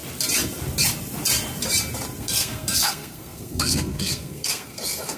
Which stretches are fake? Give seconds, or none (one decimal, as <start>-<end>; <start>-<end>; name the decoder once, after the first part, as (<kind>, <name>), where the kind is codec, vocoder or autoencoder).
2.2-5.2 (codec, SNAC)